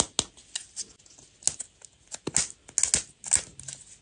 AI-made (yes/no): no